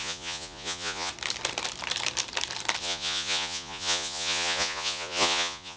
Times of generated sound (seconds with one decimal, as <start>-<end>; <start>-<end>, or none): 0.0-1.1; 2.8-5.8